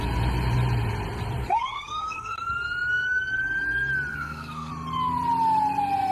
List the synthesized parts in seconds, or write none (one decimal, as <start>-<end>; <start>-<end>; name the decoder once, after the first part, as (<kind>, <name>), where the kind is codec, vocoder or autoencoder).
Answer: 1.4-2.5 (codec, SNAC); 4.1-4.7